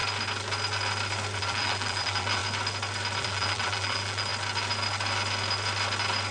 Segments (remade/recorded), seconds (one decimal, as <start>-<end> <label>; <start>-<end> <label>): 0.0-1.4 recorded; 1.4-2.4 remade; 2.4-3.2 recorded; 3.2-4.3 remade; 4.3-6.3 recorded